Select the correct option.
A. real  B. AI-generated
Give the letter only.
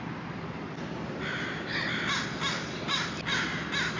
A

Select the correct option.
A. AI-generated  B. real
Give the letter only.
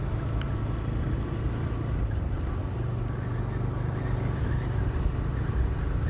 B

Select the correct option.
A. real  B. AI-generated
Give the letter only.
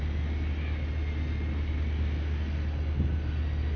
A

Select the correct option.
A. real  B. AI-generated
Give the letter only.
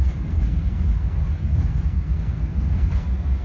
B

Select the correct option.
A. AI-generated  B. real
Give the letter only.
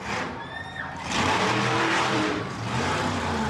A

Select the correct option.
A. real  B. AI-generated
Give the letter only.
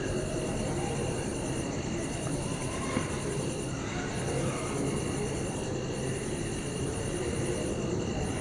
A